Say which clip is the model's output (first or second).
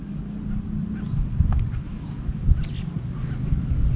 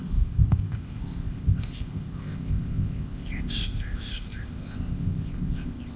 second